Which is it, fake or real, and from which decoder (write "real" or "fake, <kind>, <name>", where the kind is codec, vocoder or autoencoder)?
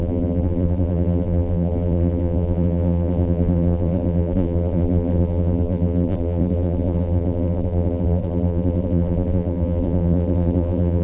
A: fake, vocoder, BigVGAN v2